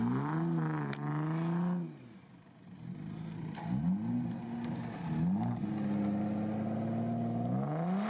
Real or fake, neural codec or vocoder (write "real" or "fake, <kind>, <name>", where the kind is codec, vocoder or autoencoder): real